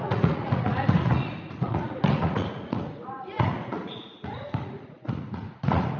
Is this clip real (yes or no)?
no